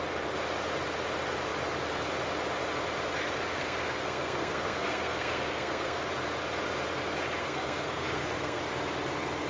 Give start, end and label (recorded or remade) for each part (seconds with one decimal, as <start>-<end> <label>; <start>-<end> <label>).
0.0-3.5 recorded; 3.5-6.0 remade; 6.0-7.4 recorded; 7.4-8.6 remade; 8.6-9.5 recorded